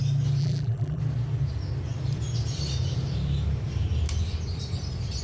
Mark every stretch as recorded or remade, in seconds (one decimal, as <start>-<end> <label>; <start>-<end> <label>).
0.0-0.4 recorded; 0.4-1.0 remade; 1.0-5.2 recorded